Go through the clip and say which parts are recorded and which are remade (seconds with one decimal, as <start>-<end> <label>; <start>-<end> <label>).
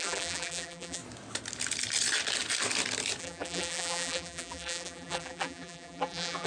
0.0-1.0 remade; 1.0-3.2 recorded; 3.2-6.5 remade